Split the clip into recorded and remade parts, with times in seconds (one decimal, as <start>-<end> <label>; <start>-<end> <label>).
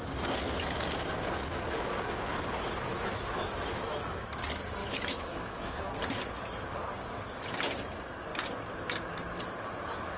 0.0-2.9 recorded; 2.9-4.3 remade; 4.3-4.8 recorded; 4.8-5.8 remade; 5.8-10.2 recorded